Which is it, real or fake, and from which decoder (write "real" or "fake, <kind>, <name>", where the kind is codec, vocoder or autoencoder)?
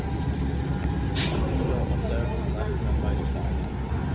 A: real